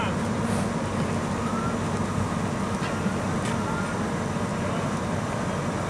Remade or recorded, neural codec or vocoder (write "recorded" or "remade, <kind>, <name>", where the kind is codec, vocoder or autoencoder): recorded